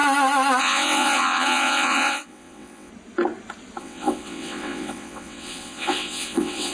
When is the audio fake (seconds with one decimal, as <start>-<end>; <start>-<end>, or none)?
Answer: 0.6-2.9; 3.8-6.7